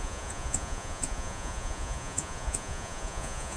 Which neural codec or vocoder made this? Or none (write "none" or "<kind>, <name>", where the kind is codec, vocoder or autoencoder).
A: vocoder, Vocos